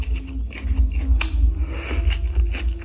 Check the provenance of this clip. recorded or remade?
recorded